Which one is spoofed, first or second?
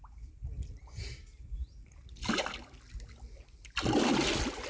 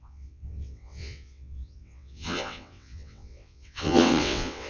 second